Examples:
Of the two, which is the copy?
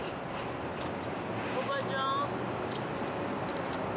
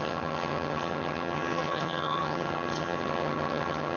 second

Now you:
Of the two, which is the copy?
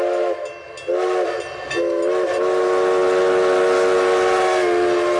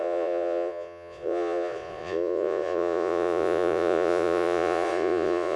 second